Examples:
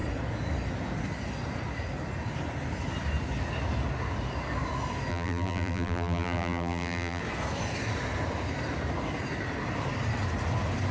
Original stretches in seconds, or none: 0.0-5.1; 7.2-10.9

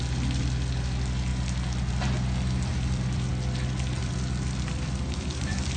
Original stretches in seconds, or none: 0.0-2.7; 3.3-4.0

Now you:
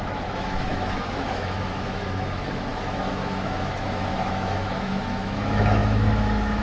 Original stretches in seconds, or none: none